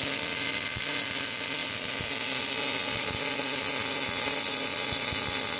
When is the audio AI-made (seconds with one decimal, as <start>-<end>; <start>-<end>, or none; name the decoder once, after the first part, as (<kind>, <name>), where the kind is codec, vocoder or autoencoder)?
none